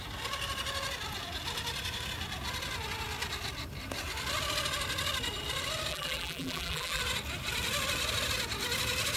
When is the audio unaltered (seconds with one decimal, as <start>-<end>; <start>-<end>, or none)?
0.0-5.9; 7.0-9.2